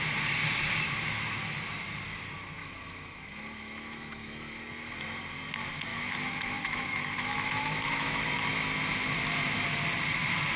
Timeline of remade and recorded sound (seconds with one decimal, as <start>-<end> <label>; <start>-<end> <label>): 0.0-2.6 recorded; 2.6-4.6 remade; 4.6-5.9 recorded; 5.9-8.2 remade; 8.2-10.6 recorded